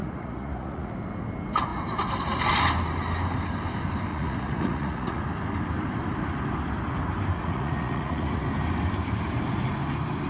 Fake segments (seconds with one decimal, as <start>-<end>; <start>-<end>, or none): 0.0-0.9; 4.1-5.2; 7.3-8.4